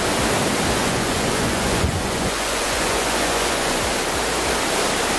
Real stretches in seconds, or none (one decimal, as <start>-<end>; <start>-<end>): 0.0-0.8; 3.8-5.2